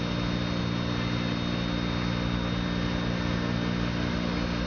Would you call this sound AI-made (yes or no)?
no